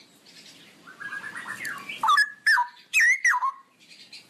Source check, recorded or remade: recorded